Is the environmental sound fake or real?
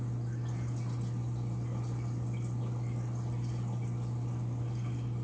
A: real